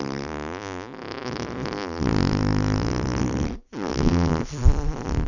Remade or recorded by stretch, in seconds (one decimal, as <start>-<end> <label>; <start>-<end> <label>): 0.0-3.9 recorded; 3.9-4.5 remade; 4.5-5.3 recorded